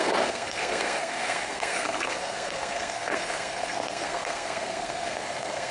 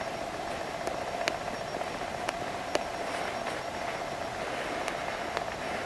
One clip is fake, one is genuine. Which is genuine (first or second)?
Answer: second